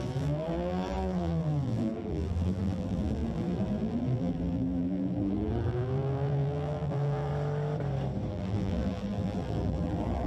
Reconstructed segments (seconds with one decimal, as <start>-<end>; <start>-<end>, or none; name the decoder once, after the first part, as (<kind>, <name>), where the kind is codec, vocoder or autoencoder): 0.0-7.3 (vocoder, BigVGAN v2); 8.3-10.3